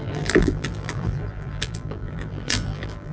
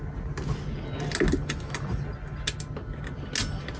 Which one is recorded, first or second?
second